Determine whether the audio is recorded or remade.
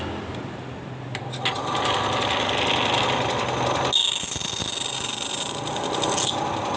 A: recorded